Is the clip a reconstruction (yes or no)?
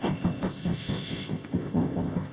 yes